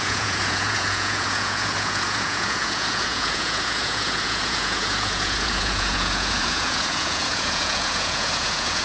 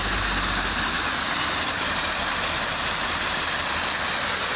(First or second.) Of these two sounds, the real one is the second